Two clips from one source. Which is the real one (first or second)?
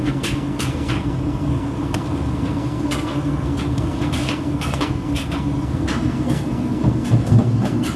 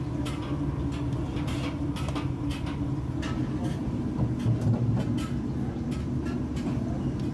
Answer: second